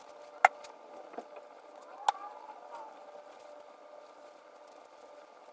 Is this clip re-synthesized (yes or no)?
no